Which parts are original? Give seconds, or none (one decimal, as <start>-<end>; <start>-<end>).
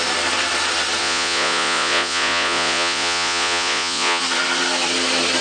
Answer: 0.0-1.0; 4.2-5.4